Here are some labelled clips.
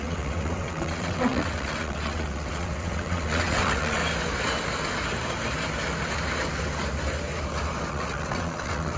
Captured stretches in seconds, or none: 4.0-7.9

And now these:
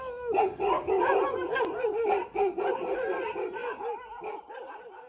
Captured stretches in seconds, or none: 0.0-5.1

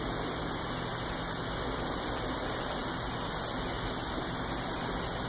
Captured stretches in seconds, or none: 0.0-5.3

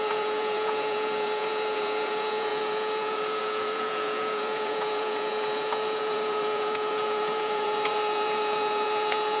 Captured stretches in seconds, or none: none

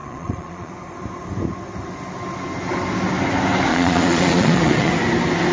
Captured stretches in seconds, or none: 0.7-3.7; 4.9-5.5

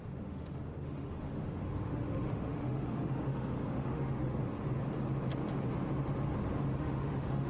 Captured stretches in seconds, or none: 4.4-6.8

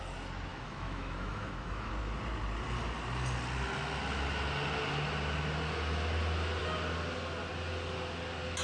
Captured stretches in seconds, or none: 0.0-0.5; 1.9-8.6

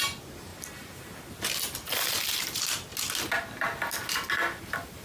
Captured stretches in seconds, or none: 0.0-5.0